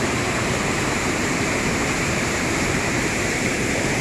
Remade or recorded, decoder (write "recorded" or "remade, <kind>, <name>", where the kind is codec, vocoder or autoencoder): remade, vocoder, BigVGAN v2